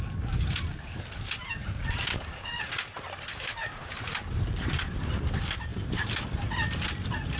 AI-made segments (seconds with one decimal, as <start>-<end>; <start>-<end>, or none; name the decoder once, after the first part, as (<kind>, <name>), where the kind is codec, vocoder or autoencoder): 2.1-2.6 (codec, DAC); 3.3-3.9